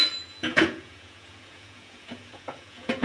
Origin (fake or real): fake